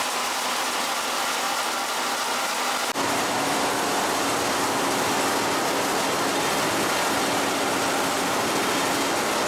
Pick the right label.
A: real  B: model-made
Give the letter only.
A